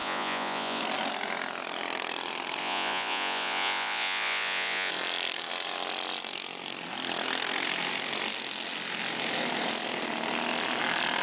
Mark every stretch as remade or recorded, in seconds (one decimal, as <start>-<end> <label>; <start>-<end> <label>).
0.0-0.8 remade; 0.8-2.6 recorded; 2.6-4.9 remade; 4.9-11.2 recorded